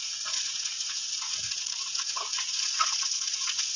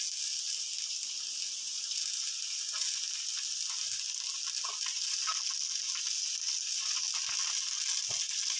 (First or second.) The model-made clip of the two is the first